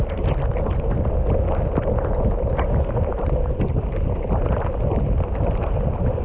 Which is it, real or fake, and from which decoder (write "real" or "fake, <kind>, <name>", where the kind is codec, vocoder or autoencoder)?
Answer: real